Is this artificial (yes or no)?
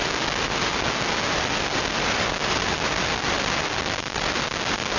no